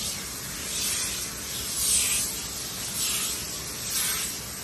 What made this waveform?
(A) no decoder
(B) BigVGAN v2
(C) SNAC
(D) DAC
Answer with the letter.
A